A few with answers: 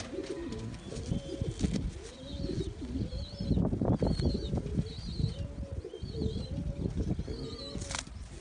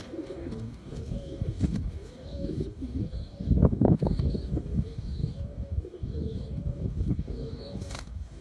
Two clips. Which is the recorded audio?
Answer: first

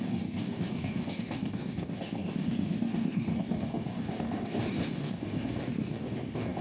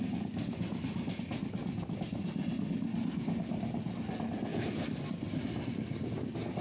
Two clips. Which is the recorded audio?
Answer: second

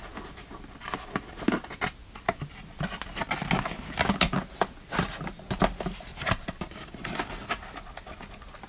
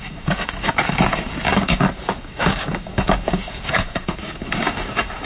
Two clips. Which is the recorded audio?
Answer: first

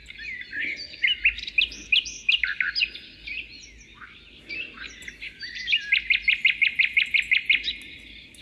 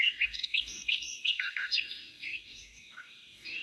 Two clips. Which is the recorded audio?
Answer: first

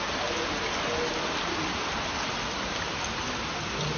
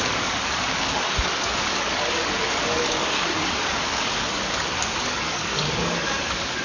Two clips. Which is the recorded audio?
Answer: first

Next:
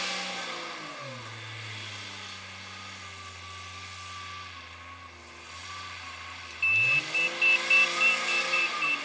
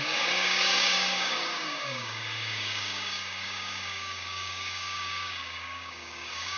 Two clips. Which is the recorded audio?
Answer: first